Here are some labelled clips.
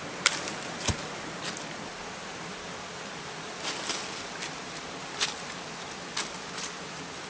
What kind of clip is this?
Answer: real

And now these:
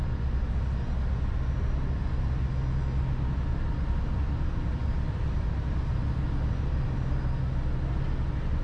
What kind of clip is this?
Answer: real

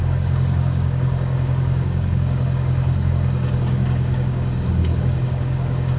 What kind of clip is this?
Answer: fake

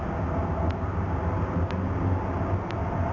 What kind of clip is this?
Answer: real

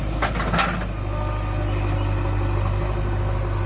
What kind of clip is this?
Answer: real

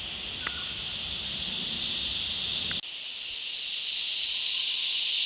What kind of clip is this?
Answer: real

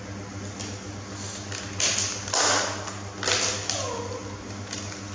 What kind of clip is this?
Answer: real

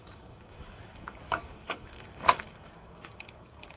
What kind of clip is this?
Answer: fake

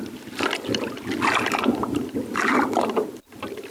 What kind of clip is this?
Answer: real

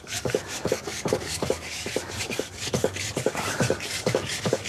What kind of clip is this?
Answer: fake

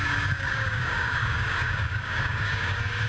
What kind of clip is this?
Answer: fake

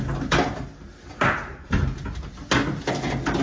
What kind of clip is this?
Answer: real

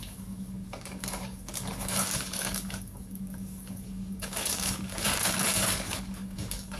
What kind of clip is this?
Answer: fake